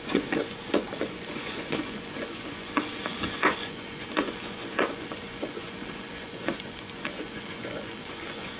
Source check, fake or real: fake